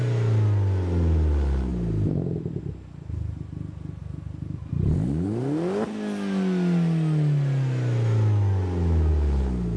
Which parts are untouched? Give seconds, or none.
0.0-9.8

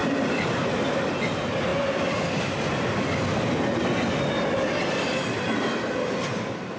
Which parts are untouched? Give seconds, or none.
0.0-6.8

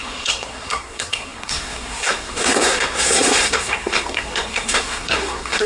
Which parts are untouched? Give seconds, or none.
none

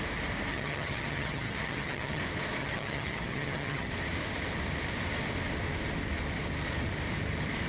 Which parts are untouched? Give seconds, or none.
0.0-0.5; 2.2-2.6; 3.9-7.7

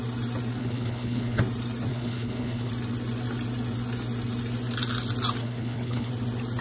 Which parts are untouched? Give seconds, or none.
0.0-0.6; 1.4-1.9; 2.7-5.4; 6.1-6.6